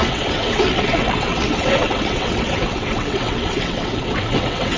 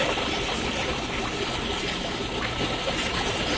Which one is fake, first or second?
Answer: first